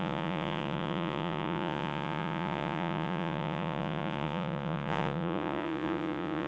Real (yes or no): no